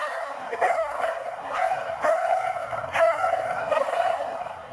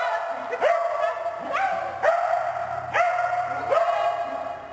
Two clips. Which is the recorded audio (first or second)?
second